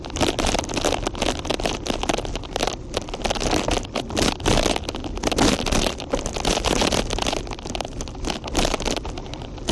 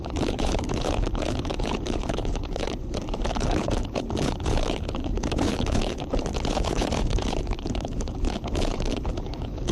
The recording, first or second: first